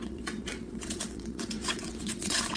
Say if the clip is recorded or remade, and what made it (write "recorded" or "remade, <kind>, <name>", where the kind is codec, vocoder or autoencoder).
remade, vocoder, WaveNeXt